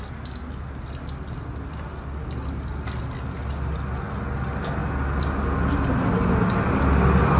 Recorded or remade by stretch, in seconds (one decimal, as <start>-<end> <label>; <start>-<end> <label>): 0.0-7.4 recorded